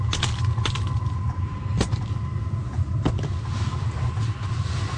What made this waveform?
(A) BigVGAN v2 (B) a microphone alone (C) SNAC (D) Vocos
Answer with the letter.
B